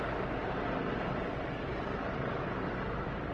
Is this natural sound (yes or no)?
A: yes